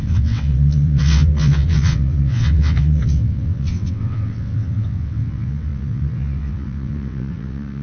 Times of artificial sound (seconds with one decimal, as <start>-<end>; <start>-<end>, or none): 0.0-7.8